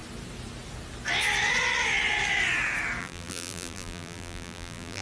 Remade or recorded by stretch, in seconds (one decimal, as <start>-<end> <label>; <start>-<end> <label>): 0.0-3.0 recorded; 3.0-5.0 remade